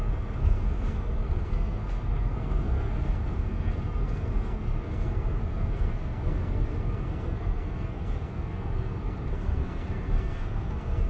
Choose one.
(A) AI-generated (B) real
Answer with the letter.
A